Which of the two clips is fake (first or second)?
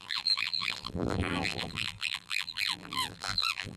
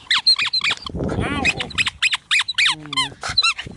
first